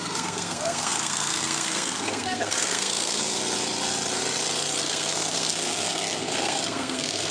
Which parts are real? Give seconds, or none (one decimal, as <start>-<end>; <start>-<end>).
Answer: 3.4-4.8

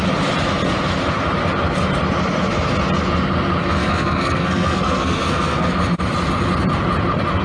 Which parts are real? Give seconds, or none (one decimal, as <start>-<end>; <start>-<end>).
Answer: 0.0-3.8; 5.7-7.4